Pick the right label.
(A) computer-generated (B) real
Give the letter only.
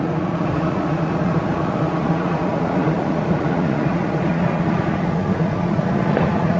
A